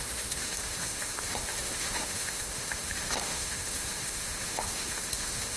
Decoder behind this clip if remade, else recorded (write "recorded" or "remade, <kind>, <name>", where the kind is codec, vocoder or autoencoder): remade, autoencoder, DAC-VAE